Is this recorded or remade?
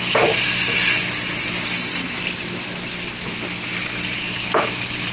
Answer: recorded